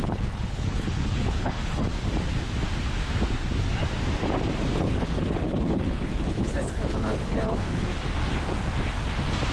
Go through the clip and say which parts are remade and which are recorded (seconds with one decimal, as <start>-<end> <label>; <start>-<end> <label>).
0.0-1.9 remade; 1.9-4.8 recorded; 4.8-7.9 remade; 7.9-9.5 recorded